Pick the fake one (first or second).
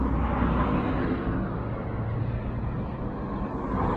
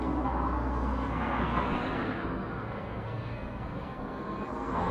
second